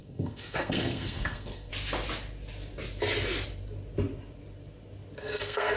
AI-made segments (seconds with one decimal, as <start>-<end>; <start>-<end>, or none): 0.0-1.7; 5.2-5.8